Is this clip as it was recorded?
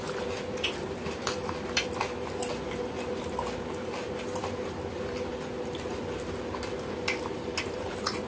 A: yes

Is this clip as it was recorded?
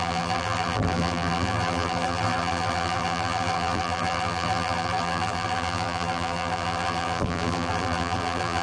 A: no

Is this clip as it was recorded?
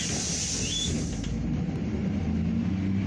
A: yes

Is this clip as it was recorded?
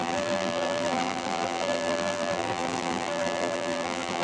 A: no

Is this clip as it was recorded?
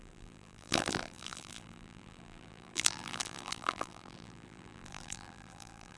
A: no